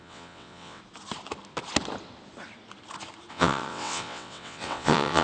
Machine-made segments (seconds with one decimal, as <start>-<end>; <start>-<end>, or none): 0.0-0.8; 3.3-5.2